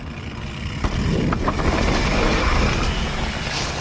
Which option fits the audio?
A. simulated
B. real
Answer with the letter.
B